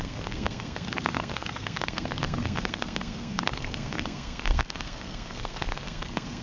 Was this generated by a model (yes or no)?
yes